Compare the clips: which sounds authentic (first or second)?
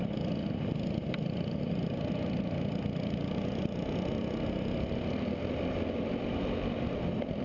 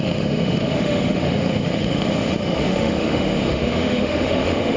first